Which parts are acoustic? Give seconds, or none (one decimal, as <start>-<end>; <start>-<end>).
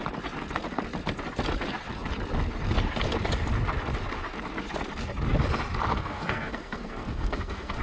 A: 0.0-5.9